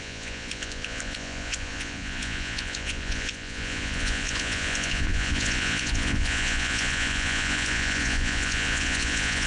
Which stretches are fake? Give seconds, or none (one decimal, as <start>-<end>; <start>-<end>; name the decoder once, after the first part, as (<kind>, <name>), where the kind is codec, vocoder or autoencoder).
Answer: 0.0-9.5 (vocoder, Vocos)